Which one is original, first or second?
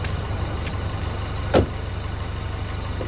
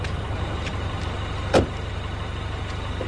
first